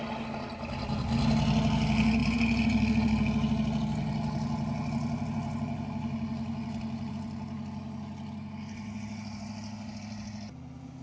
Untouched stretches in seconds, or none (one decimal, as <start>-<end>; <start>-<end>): 0.0-11.0